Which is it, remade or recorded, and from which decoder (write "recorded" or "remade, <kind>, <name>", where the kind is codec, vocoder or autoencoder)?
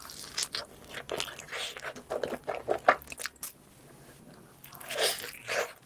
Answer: recorded